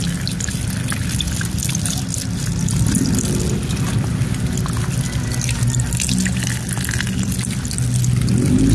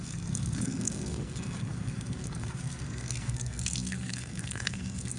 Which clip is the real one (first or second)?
first